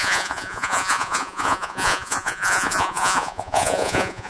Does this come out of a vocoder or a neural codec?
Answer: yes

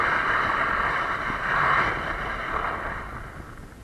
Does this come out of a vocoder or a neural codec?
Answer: no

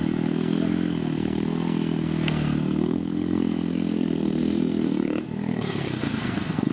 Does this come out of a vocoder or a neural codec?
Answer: yes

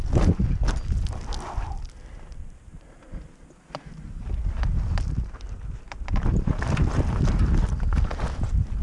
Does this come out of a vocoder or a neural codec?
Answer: no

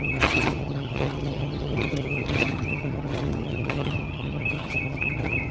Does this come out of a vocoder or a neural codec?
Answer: yes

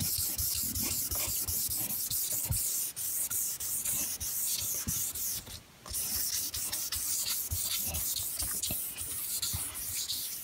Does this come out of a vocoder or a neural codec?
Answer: no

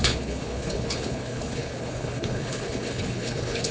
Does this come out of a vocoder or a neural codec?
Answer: yes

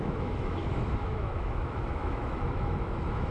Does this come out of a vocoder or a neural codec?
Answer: yes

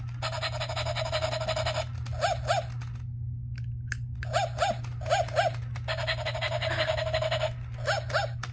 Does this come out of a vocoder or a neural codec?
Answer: no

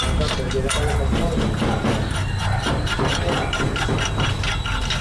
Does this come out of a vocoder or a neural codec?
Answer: no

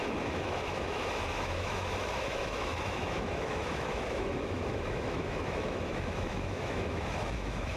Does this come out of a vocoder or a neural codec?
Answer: yes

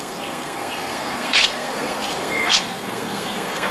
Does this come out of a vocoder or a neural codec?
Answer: yes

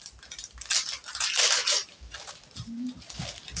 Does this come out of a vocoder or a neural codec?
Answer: no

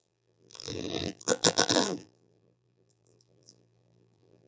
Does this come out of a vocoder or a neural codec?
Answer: yes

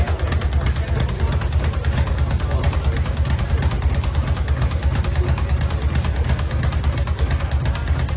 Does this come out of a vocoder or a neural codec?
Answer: no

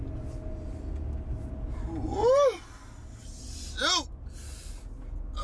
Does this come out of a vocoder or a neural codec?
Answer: no